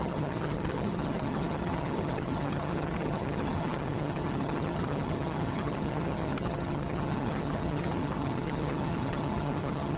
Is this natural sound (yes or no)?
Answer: no